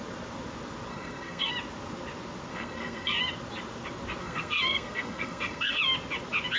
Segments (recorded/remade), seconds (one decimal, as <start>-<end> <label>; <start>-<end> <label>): 0.0-0.9 recorded; 0.9-1.5 remade; 1.5-2.5 recorded; 2.5-3.2 remade; 3.2-4.2 recorded; 4.2-5.8 remade; 5.8-6.6 recorded

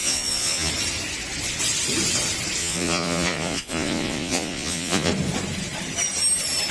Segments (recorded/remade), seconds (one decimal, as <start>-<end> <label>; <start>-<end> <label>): 0.0-0.7 remade; 0.7-2.6 recorded; 2.6-5.1 remade; 5.1-6.7 recorded

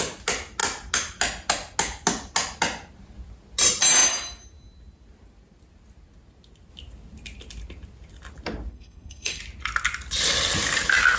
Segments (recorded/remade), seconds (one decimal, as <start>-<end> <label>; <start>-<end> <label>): 0.0-8.7 recorded; 8.7-9.4 remade; 9.4-11.2 recorded

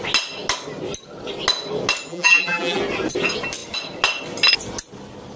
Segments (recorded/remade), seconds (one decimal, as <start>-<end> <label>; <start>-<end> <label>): 0.0-2.1 recorded; 2.1-2.8 remade; 2.8-5.4 recorded

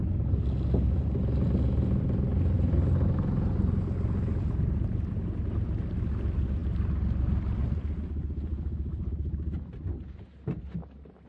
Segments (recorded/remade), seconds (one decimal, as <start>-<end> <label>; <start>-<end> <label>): 0.0-11.3 recorded